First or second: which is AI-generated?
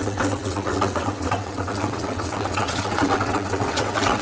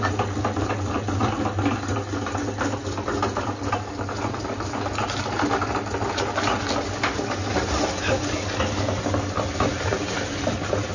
first